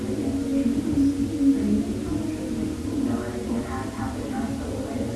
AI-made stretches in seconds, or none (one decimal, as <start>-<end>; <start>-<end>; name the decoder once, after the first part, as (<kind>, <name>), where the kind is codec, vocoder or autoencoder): none